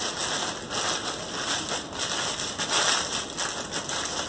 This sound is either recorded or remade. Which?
recorded